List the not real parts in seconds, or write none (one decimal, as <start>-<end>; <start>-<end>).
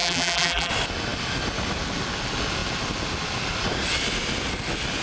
0.0-0.7